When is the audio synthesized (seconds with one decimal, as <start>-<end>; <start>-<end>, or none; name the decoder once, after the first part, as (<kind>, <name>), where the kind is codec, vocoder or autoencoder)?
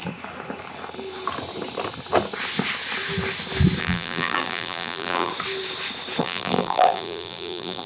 3.8-5.3 (vocoder, BigVGAN v2); 6.2-7.9